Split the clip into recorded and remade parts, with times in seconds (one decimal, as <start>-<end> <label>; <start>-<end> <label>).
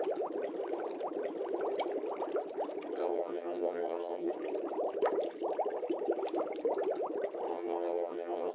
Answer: 0.0-3.0 recorded; 3.0-4.3 remade; 4.3-7.5 recorded; 7.5-8.5 remade